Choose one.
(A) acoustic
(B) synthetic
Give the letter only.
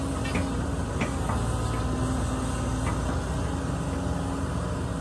A